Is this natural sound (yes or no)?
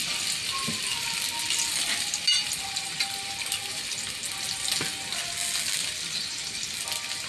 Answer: yes